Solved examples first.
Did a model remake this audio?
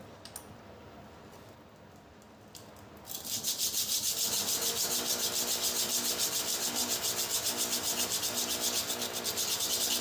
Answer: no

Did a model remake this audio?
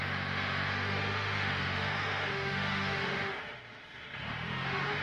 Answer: yes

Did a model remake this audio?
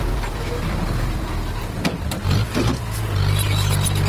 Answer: no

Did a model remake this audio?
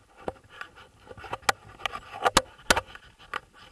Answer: no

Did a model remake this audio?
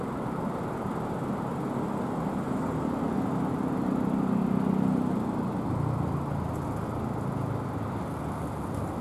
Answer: no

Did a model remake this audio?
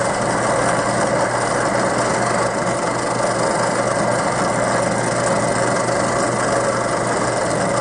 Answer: no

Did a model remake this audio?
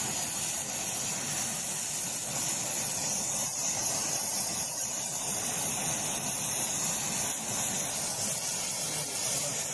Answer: no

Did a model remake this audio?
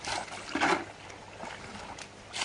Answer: no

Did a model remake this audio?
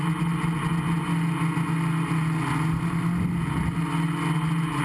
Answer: no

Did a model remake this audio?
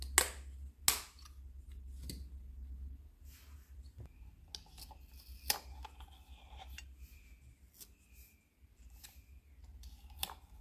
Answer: no